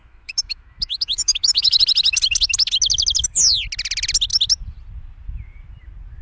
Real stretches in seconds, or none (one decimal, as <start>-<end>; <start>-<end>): 1.8-6.2

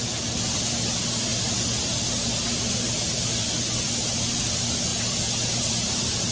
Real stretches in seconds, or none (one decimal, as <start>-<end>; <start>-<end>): 0.0-6.3

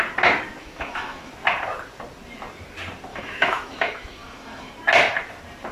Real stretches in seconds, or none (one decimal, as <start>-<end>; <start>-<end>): 0.0-0.6; 1.3-3.1; 4.7-5.7